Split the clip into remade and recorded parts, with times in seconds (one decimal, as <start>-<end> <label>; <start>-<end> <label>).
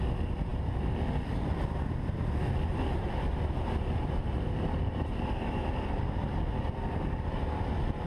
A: 0.0-4.2 recorded; 4.2-5.8 remade; 5.8-8.1 recorded